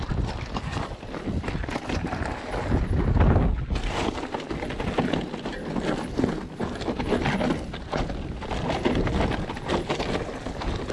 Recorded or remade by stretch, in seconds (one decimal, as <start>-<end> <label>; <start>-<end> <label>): 0.0-10.9 recorded